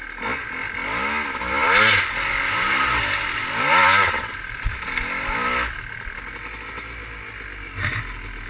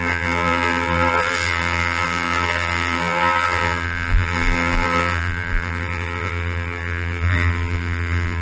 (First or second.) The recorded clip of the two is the first